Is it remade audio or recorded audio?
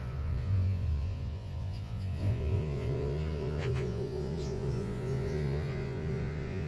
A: remade